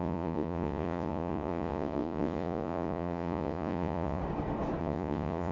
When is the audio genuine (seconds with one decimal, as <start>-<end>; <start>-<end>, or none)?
4.2-4.8